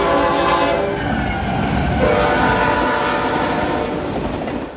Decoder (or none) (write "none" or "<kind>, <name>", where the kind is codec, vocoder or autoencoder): none